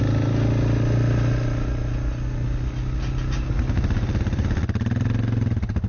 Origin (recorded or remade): recorded